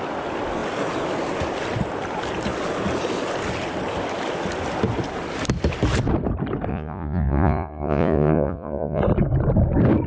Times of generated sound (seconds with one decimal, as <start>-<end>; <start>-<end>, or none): 6.7-9.0